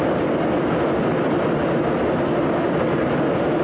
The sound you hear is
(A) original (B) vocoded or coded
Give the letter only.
A